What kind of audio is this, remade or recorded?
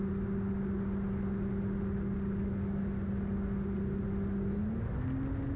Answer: recorded